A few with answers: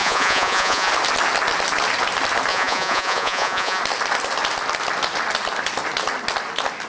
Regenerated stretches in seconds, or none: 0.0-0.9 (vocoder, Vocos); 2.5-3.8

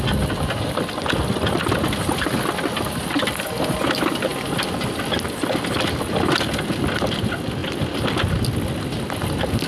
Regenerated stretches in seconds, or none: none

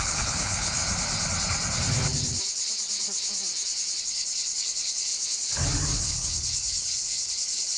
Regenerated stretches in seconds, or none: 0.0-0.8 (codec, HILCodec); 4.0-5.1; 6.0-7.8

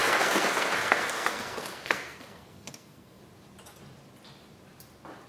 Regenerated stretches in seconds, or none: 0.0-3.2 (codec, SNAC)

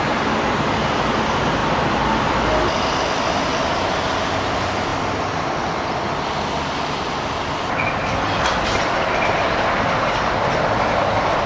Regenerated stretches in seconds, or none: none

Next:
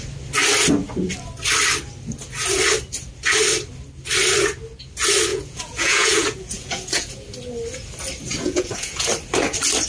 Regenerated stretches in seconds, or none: 5.3-7.1 (vocoder, Vocos); 8.3-9.1

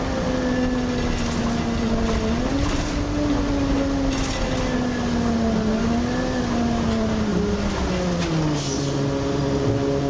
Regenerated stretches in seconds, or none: none

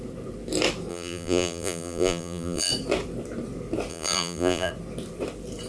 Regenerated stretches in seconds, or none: 0.9-2.7 (vocoder, BigVGAN v2); 3.9-4.7